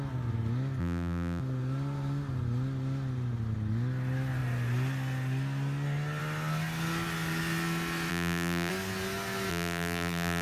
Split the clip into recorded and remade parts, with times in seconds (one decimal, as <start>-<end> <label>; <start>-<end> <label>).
0.0-0.8 recorded; 0.8-1.4 remade; 1.4-8.1 recorded; 8.1-8.7 remade; 8.7-9.5 recorded; 9.5-10.4 remade